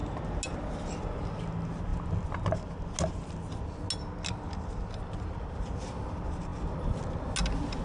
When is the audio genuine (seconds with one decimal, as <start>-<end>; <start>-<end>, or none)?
0.0-7.8